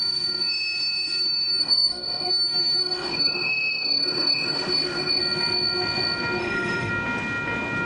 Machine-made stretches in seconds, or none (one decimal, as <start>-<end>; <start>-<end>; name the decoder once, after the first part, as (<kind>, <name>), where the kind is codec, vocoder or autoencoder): 1.6-2.3 (autoencoder, DAC-VAE); 2.8-5.2; 6.4-6.9